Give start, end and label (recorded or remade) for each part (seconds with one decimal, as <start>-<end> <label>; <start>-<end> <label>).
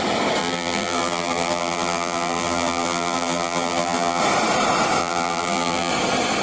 0.0-0.4 recorded; 0.4-4.2 remade; 4.2-5.0 recorded; 5.0-5.9 remade; 5.9-6.4 recorded